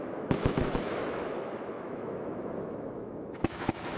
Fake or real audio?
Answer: fake